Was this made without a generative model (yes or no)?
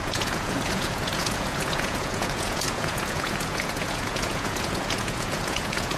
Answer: no